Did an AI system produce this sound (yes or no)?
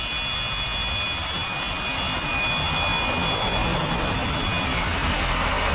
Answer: no